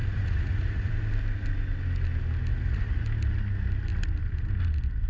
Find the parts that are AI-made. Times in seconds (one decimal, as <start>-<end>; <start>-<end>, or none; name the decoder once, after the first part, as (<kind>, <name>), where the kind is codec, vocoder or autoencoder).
0.0-0.9 (vocoder, Vocos); 2.5-3.0